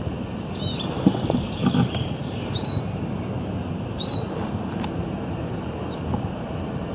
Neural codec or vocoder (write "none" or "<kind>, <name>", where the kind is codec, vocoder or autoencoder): vocoder, BigVGAN v2